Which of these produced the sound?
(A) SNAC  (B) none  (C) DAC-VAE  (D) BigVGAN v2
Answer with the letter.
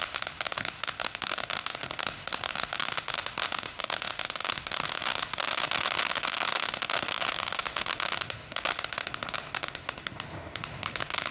C